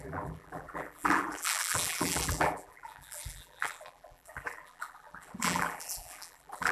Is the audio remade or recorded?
remade